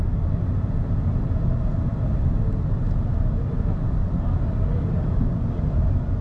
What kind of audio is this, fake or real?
real